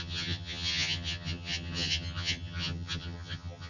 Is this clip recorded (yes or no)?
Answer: no